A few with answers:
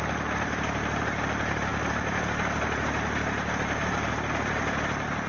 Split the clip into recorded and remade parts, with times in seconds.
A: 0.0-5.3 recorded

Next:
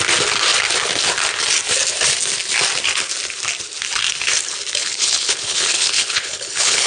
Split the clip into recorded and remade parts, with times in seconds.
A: 0.0-4.8 recorded; 4.8-6.9 remade

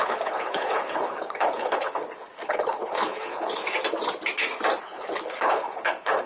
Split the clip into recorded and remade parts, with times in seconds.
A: 0.0-3.6 remade; 3.6-4.8 recorded; 4.8-6.3 remade

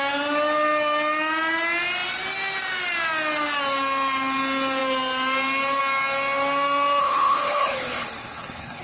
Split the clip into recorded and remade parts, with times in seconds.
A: 0.0-7.0 recorded; 7.0-8.8 remade

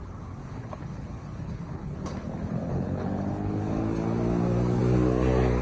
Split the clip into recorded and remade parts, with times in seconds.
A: 0.0-0.4 recorded; 0.4-3.8 remade; 3.8-5.6 recorded

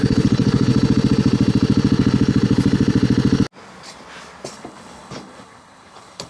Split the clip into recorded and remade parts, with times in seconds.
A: 0.0-0.7 remade; 0.7-4.5 recorded; 4.5-6.3 remade

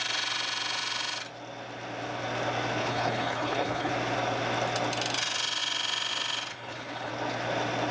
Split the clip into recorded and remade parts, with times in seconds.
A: 0.0-2.8 recorded; 2.8-3.9 remade; 3.9-6.5 recorded; 6.5-7.1 remade; 7.1-7.9 recorded